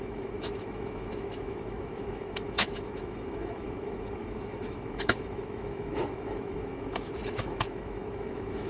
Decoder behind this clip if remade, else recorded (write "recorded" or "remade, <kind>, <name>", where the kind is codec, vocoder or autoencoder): remade, autoencoder, DAC-VAE